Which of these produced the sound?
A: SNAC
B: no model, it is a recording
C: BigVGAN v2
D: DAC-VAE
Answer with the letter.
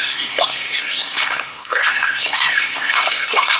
A